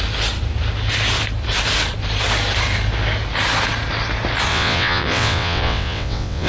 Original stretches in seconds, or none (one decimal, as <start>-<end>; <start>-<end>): 0.0-4.5